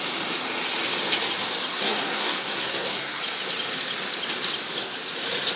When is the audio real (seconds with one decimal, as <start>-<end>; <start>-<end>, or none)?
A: 0.0-1.7; 3.2-5.6